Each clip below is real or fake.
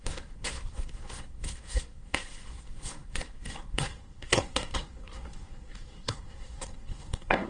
fake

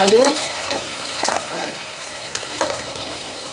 fake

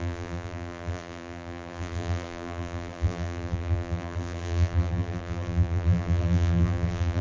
fake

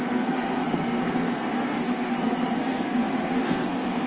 fake